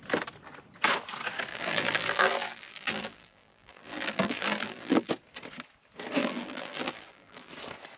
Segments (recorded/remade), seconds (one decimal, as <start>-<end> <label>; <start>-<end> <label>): 0.0-1.5 recorded; 1.5-5.1 remade; 5.1-6.2 recorded; 6.2-7.5 remade; 7.5-8.0 recorded